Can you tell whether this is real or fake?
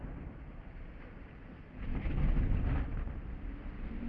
real